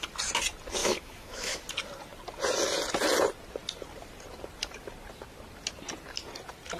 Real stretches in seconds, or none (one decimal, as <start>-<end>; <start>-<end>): 0.0-0.8; 1.6-6.8